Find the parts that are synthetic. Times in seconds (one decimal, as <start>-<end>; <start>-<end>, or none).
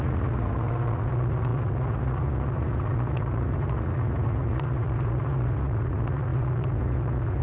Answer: 0.0-7.4